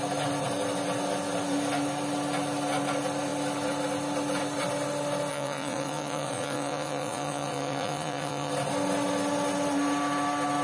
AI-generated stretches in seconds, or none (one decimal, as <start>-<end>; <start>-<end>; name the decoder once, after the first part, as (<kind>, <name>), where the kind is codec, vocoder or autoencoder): 5.3-8.5 (vocoder, Vocos)

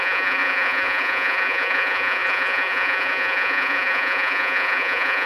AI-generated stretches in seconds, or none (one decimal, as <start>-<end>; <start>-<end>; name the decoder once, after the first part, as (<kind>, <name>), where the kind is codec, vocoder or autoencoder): 0.0-5.3 (vocoder, Vocos)

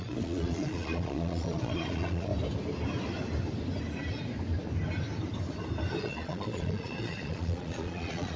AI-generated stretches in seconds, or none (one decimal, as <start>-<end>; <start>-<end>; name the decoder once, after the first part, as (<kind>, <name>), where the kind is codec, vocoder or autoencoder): 0.0-2.3 (vocoder, Vocos); 6.0-8.4